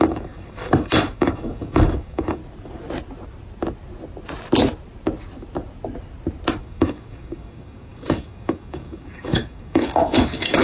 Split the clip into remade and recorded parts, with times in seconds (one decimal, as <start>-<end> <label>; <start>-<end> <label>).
0.0-2.4 remade; 2.4-6.6 recorded; 6.6-10.6 remade